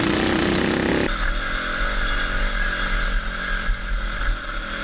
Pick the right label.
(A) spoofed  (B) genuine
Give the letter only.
B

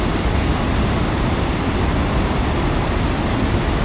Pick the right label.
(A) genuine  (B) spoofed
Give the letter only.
A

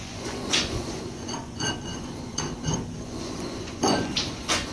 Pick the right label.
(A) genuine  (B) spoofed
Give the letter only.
B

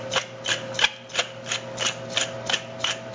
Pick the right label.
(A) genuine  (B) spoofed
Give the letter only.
A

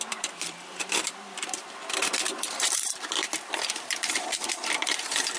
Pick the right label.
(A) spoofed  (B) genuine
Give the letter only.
A